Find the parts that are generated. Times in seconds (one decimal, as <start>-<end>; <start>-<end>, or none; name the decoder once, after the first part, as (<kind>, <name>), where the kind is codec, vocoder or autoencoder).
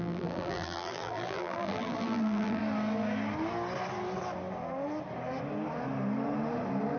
0.0-2.6 (vocoder, BigVGAN v2)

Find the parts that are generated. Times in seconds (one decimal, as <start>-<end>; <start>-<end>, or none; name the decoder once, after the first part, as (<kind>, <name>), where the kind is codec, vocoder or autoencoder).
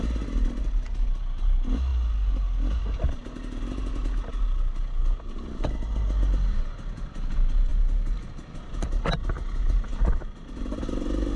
3.2-3.8 (vocoder, BigVGAN v2); 9.9-10.8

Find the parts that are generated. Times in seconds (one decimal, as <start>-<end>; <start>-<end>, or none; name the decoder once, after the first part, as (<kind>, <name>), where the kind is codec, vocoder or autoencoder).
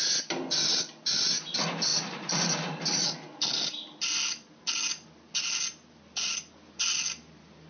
none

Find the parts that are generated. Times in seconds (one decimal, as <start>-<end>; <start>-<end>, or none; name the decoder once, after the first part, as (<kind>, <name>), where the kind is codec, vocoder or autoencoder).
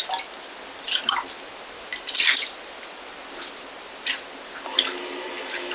none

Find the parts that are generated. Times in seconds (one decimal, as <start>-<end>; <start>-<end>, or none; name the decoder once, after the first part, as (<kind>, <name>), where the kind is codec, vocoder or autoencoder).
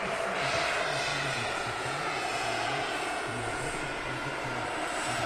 1.1-4.3 (vocoder, Vocos)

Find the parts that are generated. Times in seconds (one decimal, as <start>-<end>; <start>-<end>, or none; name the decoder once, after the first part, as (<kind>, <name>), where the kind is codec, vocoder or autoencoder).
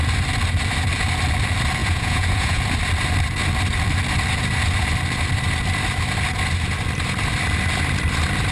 1.8-2.6 (vocoder, Vocos)